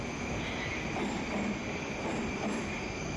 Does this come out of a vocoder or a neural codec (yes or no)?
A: no